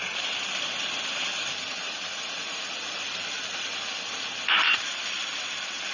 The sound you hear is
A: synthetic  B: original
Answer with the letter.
B